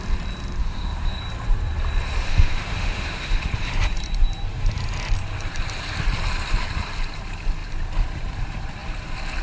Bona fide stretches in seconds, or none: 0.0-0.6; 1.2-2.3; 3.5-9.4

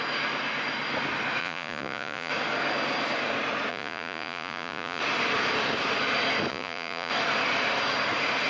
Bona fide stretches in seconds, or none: 0.0-1.4; 2.3-3.7; 5.0-6.5; 7.1-8.5

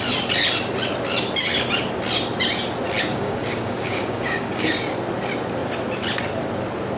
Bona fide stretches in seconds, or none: 0.0-3.1; 4.7-7.0